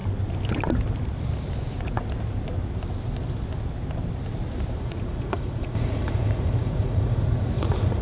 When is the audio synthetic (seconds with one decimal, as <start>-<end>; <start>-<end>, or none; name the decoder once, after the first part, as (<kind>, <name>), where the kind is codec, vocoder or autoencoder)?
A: 4.8-8.0 (vocoder, Vocos)

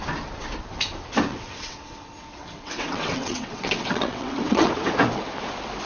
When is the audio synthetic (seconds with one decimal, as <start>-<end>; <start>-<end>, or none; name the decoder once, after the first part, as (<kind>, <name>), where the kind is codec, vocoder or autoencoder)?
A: 1.3-4.7 (vocoder, WaveNeXt)

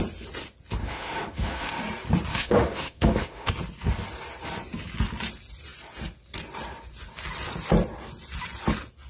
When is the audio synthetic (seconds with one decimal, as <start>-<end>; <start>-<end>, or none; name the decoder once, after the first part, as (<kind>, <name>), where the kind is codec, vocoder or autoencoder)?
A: 0.8-1.8 (autoencoder, DAC-VAE); 2.3-3.5

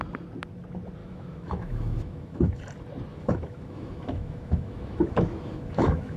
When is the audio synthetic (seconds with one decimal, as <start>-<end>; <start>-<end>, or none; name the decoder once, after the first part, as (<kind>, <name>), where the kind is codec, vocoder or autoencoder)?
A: 1.0-2.6 (autoencoder, DAC-VAE); 3.1-6.2

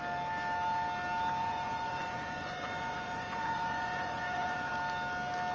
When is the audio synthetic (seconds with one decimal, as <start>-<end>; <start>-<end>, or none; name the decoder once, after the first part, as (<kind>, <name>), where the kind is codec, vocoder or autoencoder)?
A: 1.4-4.7 (vocoder, Vocos)

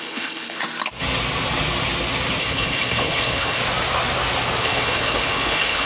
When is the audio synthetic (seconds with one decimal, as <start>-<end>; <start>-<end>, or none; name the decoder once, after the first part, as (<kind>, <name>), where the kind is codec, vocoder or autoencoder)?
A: 0.0-0.6 (codec, HILCodec); 2.4-3.6; 4.6-5.9